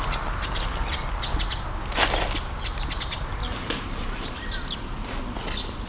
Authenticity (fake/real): real